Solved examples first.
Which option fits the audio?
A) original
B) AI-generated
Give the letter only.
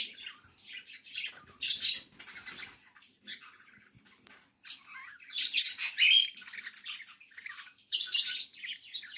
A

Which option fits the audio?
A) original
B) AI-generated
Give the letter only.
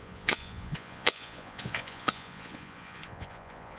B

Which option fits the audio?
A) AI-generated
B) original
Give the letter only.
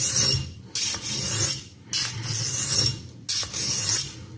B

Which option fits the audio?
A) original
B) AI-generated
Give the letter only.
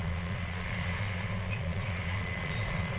B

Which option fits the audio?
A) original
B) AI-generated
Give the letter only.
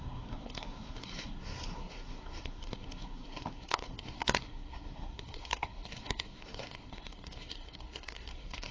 B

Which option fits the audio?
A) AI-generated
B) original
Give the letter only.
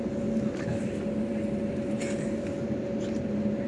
B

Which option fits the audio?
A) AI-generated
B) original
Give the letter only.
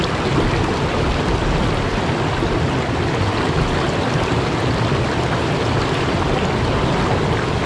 B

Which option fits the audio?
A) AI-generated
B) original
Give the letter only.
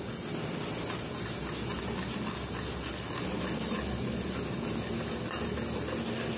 B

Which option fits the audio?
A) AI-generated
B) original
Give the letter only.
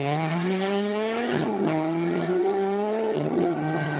A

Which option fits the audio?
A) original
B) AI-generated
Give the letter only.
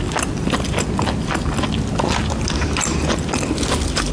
A